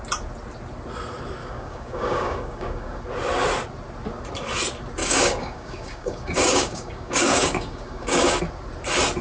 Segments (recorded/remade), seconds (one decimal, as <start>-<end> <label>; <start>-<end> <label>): 0.0-1.4 recorded; 1.4-3.0 remade; 3.0-5.0 recorded; 5.0-8.4 remade; 8.4-9.2 recorded